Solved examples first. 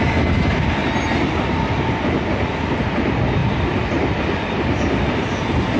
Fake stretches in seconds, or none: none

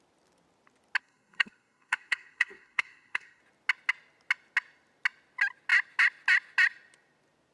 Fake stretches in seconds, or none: 1.0-3.4 (codec, SNAC)

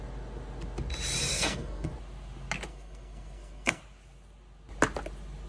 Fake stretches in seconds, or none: 1.3-1.9 (codec, SNAC); 2.7-3.8

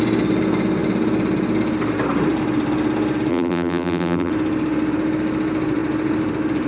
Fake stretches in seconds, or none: 3.3-4.3 (vocoder, BigVGAN v2)